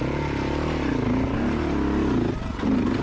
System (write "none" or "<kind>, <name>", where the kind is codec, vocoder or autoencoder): none